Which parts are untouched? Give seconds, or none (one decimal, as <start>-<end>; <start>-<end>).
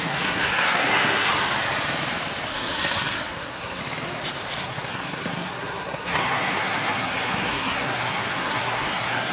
1.3-2.5; 3.8-4.6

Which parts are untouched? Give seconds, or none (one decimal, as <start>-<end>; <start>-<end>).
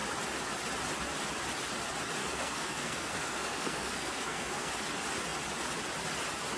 0.0-2.2; 4.7-6.6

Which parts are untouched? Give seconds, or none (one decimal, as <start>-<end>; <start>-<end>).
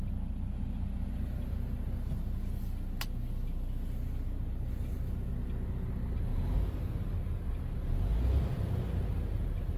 0.0-9.8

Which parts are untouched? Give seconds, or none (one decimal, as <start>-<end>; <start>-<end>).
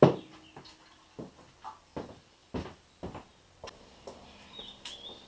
0.0-3.3; 4.6-5.3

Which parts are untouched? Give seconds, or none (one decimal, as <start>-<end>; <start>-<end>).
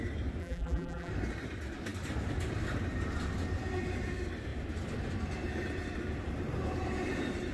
0.0-0.4; 1.1-7.5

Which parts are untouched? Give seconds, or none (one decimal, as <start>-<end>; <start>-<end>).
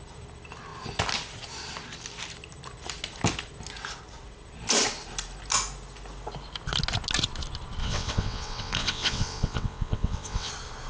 0.0-7.8; 10.5-10.9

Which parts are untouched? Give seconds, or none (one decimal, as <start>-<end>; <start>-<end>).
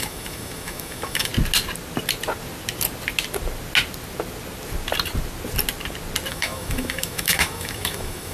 1.3-6.3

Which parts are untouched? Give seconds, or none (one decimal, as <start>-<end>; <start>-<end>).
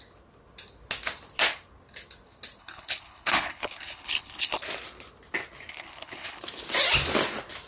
0.0-2.6; 4.6-5.7; 6.4-7.7